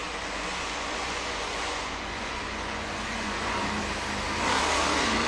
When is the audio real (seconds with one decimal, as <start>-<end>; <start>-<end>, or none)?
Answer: 3.6-5.3